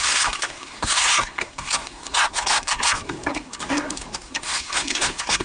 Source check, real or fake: fake